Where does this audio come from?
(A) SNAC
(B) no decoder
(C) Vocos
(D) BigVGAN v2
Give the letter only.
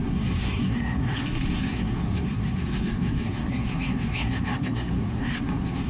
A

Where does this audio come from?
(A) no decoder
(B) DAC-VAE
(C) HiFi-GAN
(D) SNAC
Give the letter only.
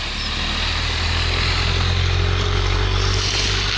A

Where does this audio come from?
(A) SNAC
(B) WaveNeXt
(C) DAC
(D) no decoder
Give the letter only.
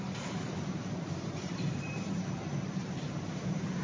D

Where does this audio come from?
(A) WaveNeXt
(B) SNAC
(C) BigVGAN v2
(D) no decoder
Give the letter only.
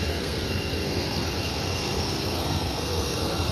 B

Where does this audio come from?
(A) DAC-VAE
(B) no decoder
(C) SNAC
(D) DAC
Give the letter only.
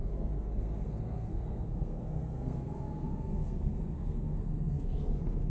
C